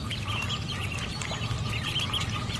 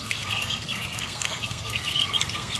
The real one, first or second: first